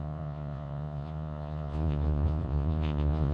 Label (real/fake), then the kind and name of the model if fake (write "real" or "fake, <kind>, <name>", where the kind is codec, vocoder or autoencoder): fake, vocoder, Vocos